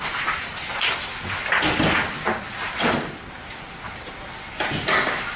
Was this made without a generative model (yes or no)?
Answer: yes